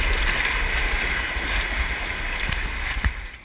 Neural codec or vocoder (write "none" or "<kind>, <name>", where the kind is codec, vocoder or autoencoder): none